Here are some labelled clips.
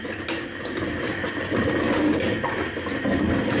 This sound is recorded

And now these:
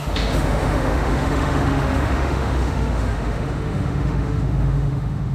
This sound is remade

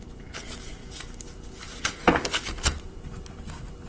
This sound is recorded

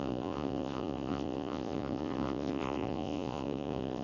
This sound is remade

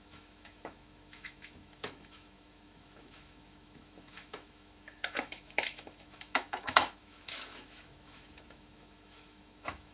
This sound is remade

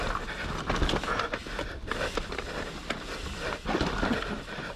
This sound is recorded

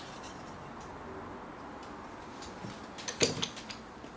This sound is recorded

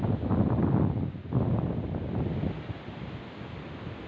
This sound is recorded